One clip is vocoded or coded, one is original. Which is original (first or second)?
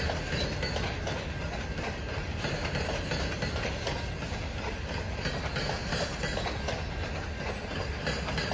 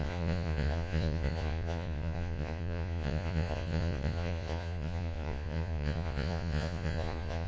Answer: first